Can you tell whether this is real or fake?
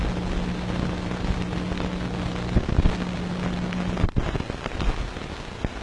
real